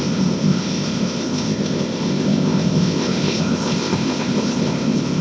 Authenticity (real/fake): fake